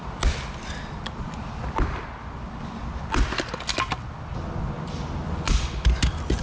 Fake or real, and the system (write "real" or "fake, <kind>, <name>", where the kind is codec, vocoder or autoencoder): real